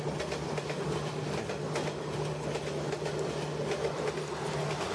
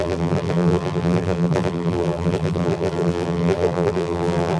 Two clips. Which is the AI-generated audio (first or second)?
second